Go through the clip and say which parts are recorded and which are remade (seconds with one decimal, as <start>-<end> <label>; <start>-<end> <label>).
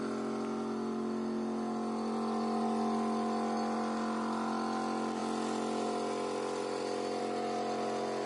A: 0.0-8.3 recorded